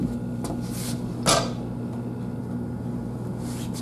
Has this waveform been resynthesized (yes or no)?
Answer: no